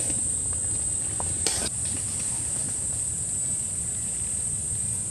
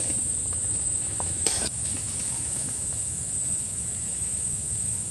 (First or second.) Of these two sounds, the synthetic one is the second